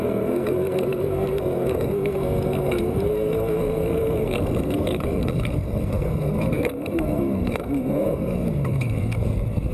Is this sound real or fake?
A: fake